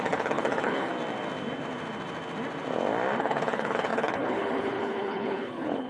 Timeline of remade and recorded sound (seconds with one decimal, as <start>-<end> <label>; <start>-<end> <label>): 0.0-0.9 remade; 0.9-3.2 recorded; 3.2-5.9 remade